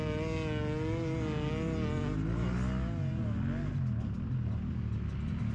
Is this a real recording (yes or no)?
yes